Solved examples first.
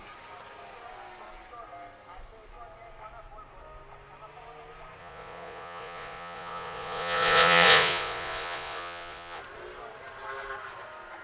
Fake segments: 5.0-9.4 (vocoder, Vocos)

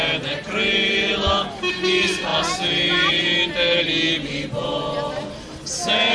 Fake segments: none

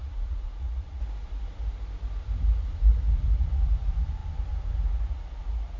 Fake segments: 0.0-1.0 (vocoder, Vocos)

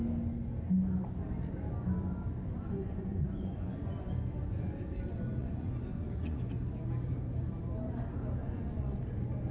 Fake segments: 2.8-4.1 (vocoder, Vocos); 5.4-6.5; 8.4-9.0

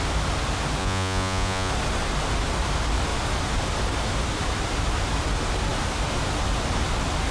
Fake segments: 0.8-1.7 (vocoder, Vocos)